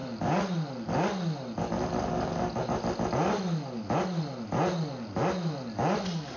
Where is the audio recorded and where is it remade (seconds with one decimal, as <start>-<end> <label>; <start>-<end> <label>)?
0.0-6.4 recorded